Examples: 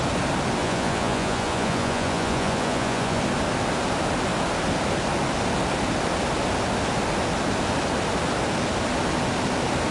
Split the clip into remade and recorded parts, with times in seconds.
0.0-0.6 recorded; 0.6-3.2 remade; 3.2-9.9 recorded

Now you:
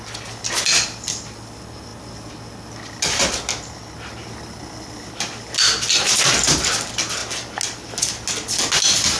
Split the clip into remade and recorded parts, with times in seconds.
0.0-9.2 recorded

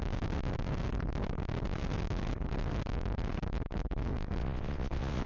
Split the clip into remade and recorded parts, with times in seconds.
0.0-4.4 recorded; 4.4-5.3 remade

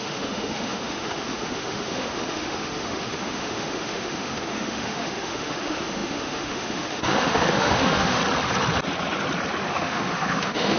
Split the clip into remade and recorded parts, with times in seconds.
0.0-8.2 remade; 8.2-9.7 recorded; 9.7-10.8 remade